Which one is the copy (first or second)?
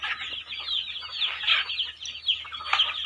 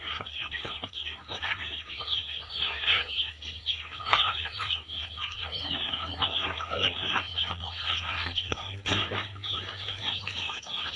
second